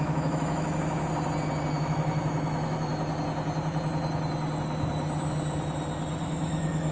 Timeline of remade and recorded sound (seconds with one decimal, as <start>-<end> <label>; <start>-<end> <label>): 0.0-1.1 remade; 1.1-1.8 recorded; 1.8-2.9 remade; 2.9-6.2 recorded; 6.2-6.9 remade